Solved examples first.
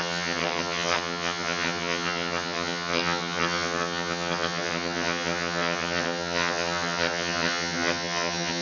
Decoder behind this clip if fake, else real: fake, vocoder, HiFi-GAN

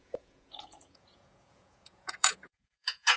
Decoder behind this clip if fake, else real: fake, vocoder, Vocos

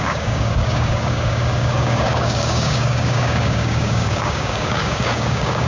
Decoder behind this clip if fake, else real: fake, codec, DAC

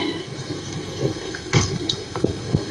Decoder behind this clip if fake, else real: fake, codec, SNAC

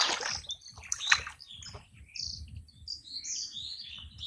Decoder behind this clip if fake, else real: real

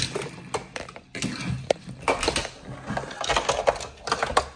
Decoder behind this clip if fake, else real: real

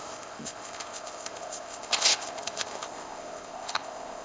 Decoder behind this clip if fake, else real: fake, codec, ZipCodec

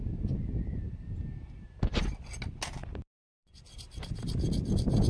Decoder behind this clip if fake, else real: real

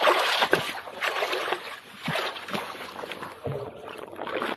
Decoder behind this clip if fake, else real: fake, vocoder, Vocos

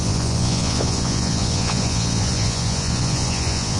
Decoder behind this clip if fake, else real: fake, vocoder, Vocos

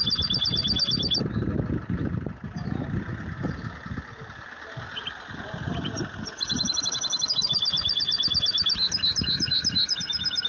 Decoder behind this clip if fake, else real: real